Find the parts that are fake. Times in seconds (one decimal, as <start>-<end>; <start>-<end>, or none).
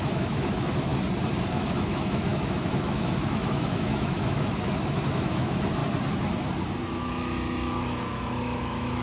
0.0-0.9; 1.5-5.8; 7.0-9.0